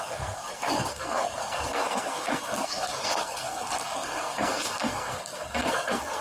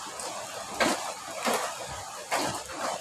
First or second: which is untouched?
second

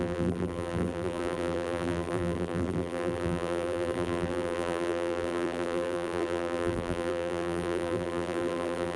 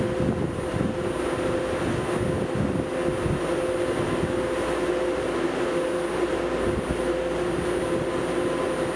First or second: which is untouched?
second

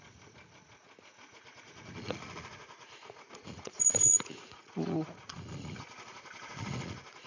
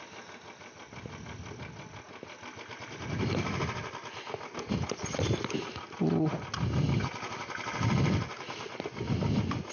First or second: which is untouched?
second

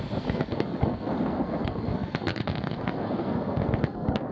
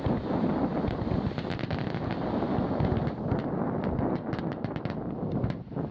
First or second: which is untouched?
second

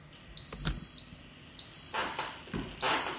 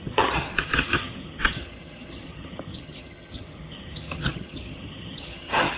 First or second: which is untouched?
first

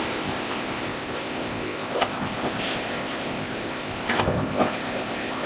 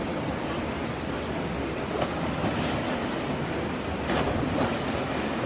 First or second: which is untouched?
second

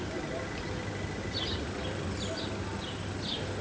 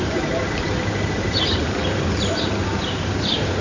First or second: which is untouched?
first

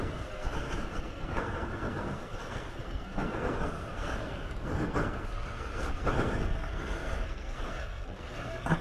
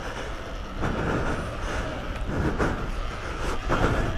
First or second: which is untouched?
second